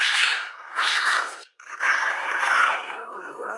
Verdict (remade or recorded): remade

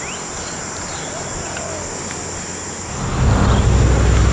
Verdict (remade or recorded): recorded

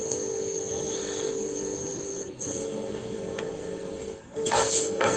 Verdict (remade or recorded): remade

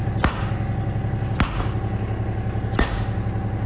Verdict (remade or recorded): recorded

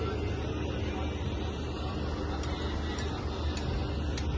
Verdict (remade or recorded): recorded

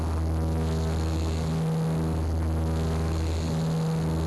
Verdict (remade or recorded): recorded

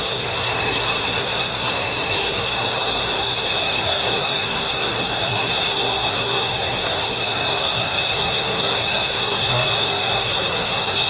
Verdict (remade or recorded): remade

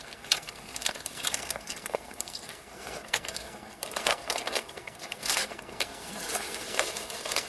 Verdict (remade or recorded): remade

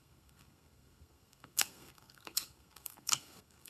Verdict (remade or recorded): remade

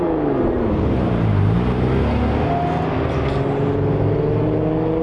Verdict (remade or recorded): recorded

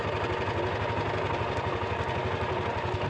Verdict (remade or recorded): recorded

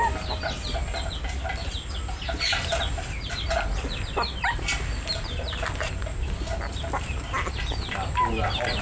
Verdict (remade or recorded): recorded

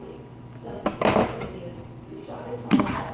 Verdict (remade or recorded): recorded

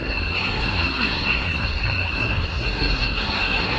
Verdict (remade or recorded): remade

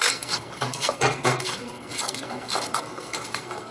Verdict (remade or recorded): remade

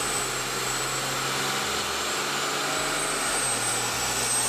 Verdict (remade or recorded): recorded